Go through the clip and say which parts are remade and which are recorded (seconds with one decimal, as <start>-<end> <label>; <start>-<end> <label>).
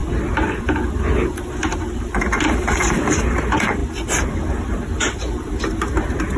0.0-6.4 recorded